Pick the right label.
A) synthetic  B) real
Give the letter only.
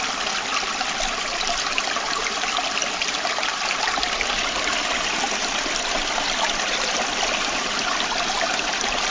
B